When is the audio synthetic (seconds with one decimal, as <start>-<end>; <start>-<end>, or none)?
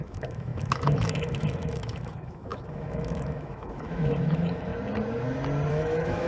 0.0-4.7; 5.7-6.3